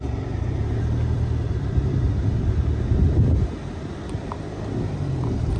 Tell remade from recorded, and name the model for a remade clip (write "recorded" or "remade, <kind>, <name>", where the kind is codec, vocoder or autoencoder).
recorded